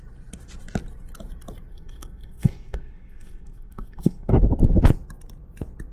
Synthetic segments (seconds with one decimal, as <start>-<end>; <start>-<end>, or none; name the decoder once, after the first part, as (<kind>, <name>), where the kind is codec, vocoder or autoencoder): 1.7-4.3 (codec, SNAC)